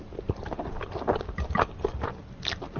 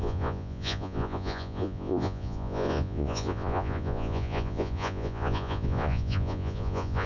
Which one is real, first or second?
first